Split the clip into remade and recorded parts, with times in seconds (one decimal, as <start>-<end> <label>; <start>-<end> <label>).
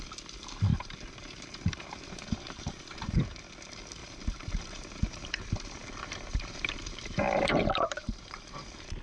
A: 0.0-0.7 recorded; 0.7-3.4 remade; 3.4-4.0 recorded; 4.0-9.0 remade